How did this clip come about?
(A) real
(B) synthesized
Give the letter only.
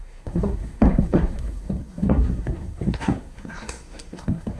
B